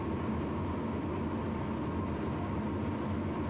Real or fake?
real